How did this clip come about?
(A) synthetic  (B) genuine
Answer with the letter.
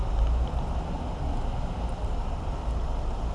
B